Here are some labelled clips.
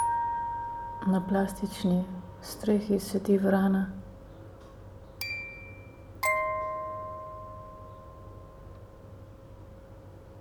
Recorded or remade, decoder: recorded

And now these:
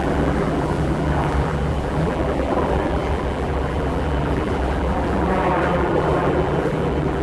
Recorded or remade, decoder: remade, vocoder, BigVGAN v2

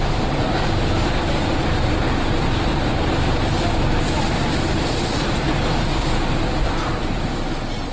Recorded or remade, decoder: remade, vocoder, BigVGAN v2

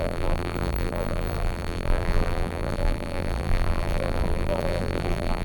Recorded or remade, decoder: remade, vocoder, BigVGAN v2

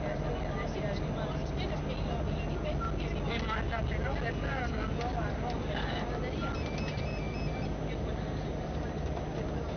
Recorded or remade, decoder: recorded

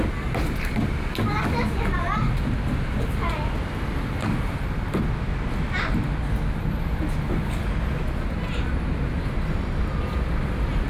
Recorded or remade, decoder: recorded